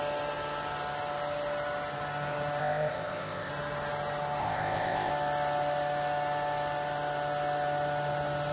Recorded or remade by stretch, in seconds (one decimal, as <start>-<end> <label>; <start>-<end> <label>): 0.0-2.6 recorded; 2.6-3.5 remade; 3.5-4.4 recorded; 4.4-5.1 remade; 5.1-8.5 recorded

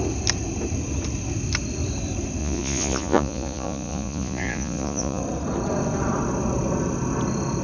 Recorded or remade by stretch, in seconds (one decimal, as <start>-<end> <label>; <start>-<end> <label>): 0.0-2.4 recorded; 2.4-5.2 remade; 5.2-7.6 recorded

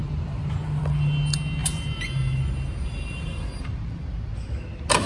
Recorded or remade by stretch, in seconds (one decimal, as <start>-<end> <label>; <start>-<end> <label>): 0.0-0.8 remade; 0.8-1.6 recorded; 1.6-4.0 remade; 4.0-5.1 recorded

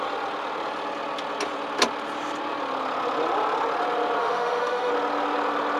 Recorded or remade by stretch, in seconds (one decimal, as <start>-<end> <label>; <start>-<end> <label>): 0.0-4.2 recorded; 4.2-4.9 remade; 4.9-5.8 recorded

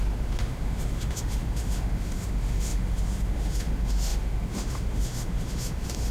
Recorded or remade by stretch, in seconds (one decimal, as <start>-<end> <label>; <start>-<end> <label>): 0.0-6.1 remade

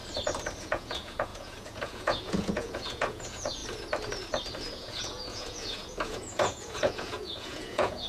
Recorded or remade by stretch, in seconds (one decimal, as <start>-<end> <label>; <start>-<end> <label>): 0.0-0.6 recorded; 0.6-3.6 remade; 3.6-4.7 recorded; 4.7-8.1 remade